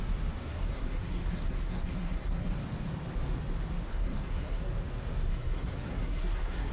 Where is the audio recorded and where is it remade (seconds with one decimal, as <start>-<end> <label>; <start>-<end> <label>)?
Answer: 0.0-0.4 recorded; 0.4-2.5 remade; 2.5-3.9 recorded; 3.9-4.6 remade; 4.6-5.3 recorded; 5.3-6.7 remade